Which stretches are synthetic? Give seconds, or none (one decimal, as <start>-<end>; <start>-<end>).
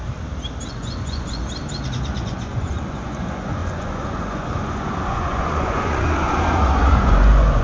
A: 0.7-1.4; 2.2-7.6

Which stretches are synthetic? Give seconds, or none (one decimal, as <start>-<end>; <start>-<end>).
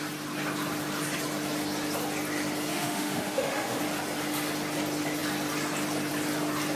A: 2.7-3.8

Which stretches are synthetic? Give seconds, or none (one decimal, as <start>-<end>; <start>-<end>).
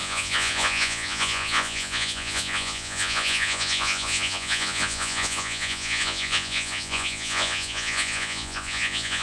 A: 0.0-9.2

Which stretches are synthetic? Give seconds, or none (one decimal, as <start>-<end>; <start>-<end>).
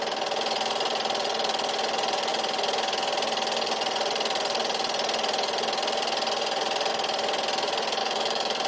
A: 8.0-8.7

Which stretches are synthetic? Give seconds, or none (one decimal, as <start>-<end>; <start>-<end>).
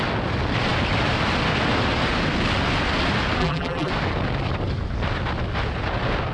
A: 3.4-3.9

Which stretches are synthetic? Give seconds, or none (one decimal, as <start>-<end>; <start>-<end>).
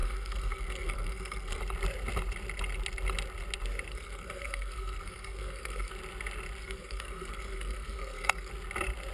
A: 0.0-1.6; 3.9-5.9; 6.6-8.5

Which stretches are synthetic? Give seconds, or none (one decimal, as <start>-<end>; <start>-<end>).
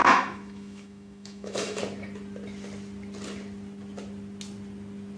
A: 0.0-1.8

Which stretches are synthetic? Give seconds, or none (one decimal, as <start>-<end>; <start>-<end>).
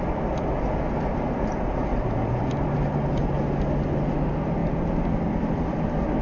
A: 1.9-3.3; 4.6-6.2